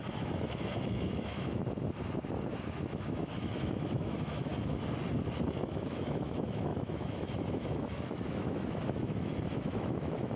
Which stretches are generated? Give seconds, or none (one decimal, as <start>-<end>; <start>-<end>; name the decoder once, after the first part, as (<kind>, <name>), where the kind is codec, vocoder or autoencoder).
0.0-1.6 (autoencoder, DAC-VAE); 2.7-4.5; 5.6-10.4